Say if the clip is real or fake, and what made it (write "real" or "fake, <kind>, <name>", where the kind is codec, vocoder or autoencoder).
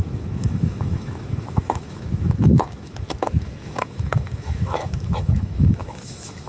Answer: fake, autoencoder, DAC-VAE